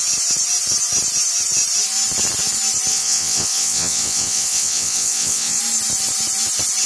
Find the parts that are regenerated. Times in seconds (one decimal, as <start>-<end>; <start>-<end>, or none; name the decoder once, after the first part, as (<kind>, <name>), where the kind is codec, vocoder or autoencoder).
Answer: 2.9-5.6 (vocoder, WaveNeXt)